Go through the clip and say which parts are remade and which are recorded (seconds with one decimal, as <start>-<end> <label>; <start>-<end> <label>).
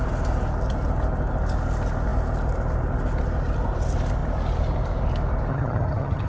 0.0-5.5 recorded; 5.5-6.3 remade